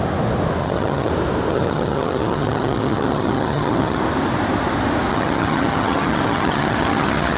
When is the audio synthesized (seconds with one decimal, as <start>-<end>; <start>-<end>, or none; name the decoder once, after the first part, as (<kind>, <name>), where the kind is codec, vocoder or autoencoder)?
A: 0.6-1.1 (vocoder, HiFi-GAN); 1.5-4.0; 5.1-7.4